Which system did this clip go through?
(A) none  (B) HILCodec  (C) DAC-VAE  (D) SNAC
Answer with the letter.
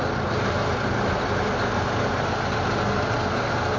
A